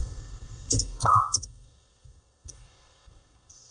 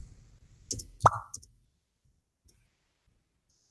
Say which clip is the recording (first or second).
second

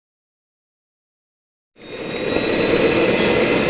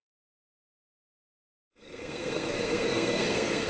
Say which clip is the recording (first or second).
first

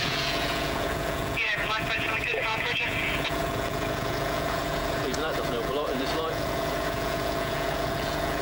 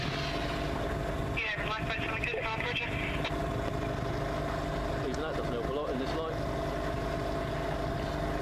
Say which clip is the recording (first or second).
second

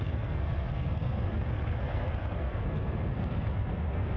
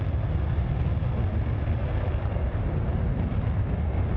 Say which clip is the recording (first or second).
second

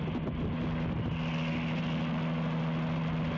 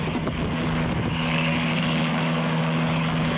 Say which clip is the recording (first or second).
first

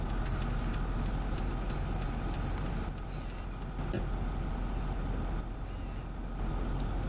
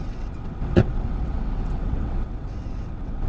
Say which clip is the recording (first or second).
first